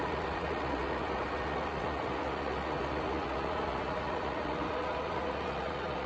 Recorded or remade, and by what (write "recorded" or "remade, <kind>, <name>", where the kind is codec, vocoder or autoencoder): remade, vocoder, Vocos